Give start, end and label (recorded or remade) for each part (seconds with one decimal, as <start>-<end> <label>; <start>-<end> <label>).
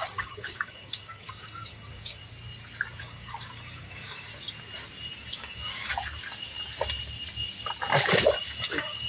0.0-2.2 remade; 2.2-3.0 recorded; 3.0-4.3 remade; 4.3-5.3 recorded; 5.3-5.9 remade; 5.9-8.4 recorded; 8.4-9.1 remade